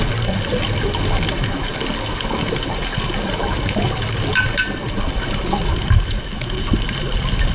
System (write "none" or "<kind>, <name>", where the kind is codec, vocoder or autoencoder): none